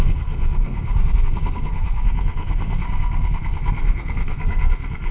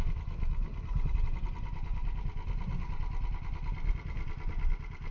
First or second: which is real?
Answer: second